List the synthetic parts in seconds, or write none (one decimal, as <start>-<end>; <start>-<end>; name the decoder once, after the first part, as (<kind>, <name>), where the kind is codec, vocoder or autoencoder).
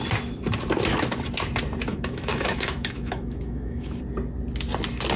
1.9-4.0 (autoencoder, DAC-VAE)